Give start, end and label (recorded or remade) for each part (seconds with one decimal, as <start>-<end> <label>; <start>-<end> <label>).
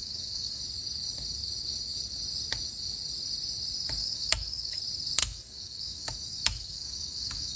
0.0-0.6 remade; 0.6-4.0 recorded; 4.0-4.8 remade; 4.8-5.2 recorded; 5.2-7.6 remade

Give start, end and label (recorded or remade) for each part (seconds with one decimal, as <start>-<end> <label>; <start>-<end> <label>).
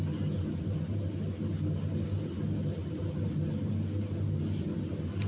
0.0-5.3 recorded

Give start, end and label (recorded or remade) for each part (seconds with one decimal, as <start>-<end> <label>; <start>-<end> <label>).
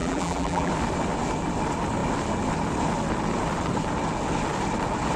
0.0-0.7 remade; 0.7-5.2 recorded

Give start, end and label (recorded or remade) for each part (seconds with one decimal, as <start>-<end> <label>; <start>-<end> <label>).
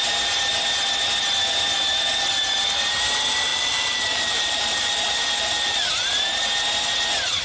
0.0-3.5 recorded; 3.5-5.9 remade; 5.9-7.4 recorded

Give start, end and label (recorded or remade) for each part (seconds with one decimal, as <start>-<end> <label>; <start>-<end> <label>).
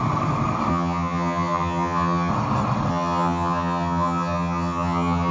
0.0-0.7 recorded; 0.7-2.3 remade; 2.3-2.9 recorded; 2.9-5.3 remade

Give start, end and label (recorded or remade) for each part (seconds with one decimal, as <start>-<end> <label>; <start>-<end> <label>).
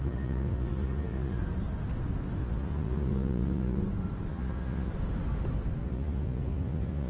0.0-1.4 remade; 1.4-2.4 recorded; 2.4-3.8 remade; 3.8-4.3 recorded; 4.3-4.9 remade; 4.9-5.8 recorded; 5.8-7.1 remade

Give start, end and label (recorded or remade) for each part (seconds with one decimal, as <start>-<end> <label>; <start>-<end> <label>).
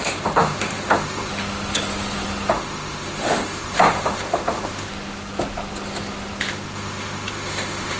0.0-1.3 remade; 1.3-2.5 recorded; 2.5-4.9 remade; 4.9-6.5 recorded; 6.5-8.0 remade